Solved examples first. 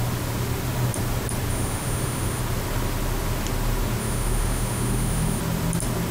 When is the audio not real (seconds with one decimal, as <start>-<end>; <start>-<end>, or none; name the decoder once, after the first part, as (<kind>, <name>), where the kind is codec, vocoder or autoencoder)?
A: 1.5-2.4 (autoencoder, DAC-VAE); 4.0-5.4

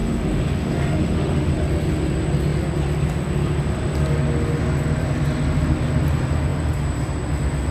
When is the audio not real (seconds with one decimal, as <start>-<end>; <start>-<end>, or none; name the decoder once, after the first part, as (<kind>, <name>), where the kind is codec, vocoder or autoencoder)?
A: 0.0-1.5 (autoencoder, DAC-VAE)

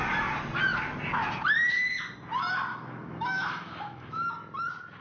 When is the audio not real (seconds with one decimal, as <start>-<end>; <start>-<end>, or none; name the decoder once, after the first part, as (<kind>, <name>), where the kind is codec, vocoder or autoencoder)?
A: 2.7-4.3 (autoencoder, DAC-VAE)

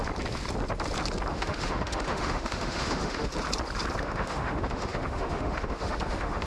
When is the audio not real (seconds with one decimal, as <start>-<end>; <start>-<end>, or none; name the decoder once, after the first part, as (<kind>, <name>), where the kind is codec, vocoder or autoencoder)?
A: 1.3-3.3 (autoencoder, DAC-VAE); 4.0-6.5